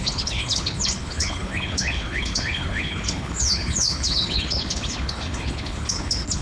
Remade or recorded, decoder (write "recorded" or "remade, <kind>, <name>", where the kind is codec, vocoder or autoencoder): remade, codec, HILCodec